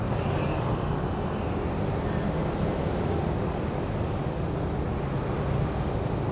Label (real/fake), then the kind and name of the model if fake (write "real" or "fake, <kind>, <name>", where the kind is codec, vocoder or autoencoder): real